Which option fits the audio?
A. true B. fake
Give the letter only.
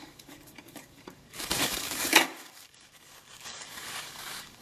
B